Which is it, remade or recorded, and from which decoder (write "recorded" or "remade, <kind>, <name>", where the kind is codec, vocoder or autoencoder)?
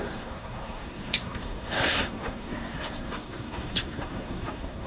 remade, codec, SNAC